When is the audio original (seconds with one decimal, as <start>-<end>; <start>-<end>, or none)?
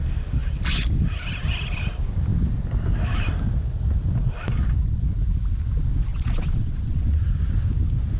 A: 0.0-6.1; 7.2-8.2